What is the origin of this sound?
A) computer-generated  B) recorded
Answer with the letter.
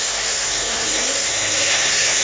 A